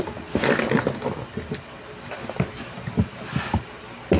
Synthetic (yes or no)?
no